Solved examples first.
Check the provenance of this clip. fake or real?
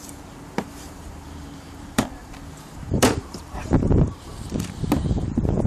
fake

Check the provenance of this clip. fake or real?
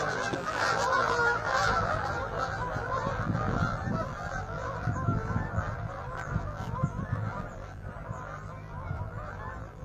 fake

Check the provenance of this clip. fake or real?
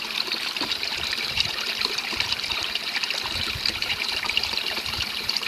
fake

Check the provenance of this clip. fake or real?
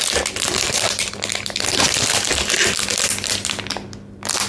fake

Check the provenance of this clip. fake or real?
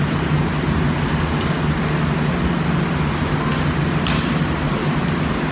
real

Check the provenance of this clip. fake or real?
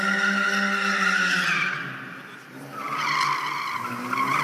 real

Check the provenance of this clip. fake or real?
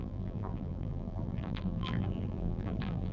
fake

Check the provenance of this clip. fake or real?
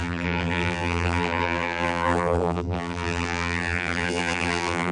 fake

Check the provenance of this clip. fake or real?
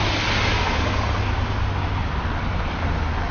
real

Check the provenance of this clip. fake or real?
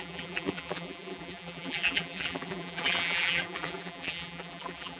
fake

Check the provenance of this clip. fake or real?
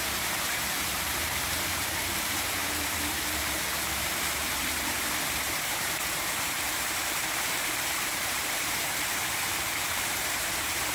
fake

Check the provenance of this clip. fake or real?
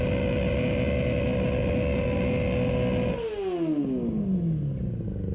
real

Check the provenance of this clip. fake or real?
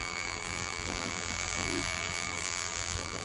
fake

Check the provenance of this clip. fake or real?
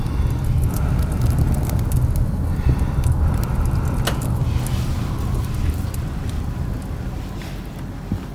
real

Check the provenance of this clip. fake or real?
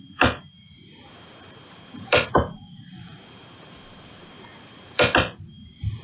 fake